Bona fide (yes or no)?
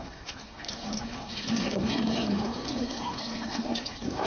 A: no